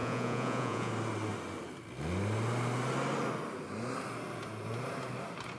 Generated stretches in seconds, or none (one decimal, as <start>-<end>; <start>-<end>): 0.0-0.9